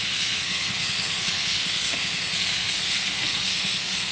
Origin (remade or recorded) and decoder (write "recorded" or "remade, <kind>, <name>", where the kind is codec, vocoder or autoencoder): remade, codec, SNAC